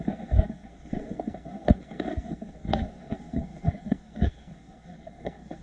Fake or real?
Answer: fake